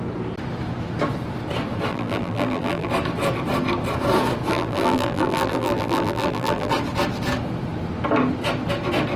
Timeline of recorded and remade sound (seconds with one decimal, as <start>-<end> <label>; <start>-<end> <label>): 0.0-1.9 recorded; 1.9-2.9 remade; 2.9-4.5 recorded; 4.5-6.7 remade; 6.7-9.2 recorded